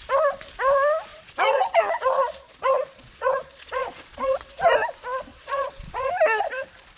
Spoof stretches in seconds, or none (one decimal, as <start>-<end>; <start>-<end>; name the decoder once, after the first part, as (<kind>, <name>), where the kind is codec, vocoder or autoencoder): 1.1-4.6 (vocoder, Vocos); 5.3-6.1